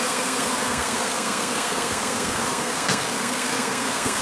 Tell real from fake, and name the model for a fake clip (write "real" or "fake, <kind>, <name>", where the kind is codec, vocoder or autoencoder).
fake, codec, SNAC